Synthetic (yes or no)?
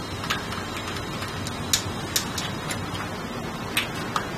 no